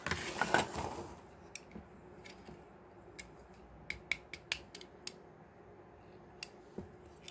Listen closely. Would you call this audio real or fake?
real